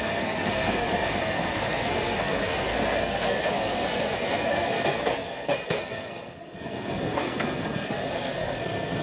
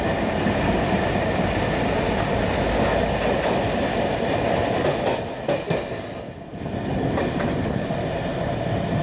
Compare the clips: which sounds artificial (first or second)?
first